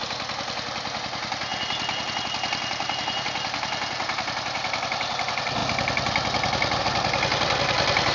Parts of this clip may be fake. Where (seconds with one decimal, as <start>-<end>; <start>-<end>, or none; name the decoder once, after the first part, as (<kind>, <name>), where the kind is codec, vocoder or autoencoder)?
none